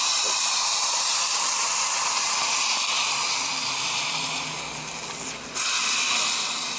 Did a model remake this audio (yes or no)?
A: no